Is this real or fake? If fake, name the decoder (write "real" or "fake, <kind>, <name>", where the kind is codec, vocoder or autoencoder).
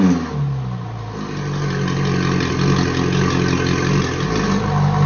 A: real